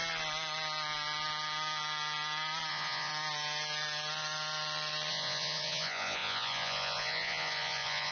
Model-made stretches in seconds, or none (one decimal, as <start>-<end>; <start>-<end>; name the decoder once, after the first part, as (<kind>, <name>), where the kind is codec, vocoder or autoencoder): 2.7-3.1 (vocoder, Vocos); 5.1-8.1